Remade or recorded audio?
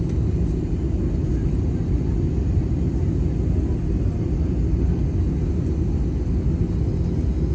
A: recorded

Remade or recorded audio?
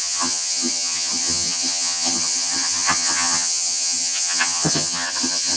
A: remade